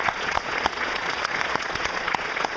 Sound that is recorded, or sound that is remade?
remade